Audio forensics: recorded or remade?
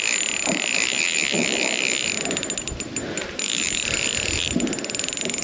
recorded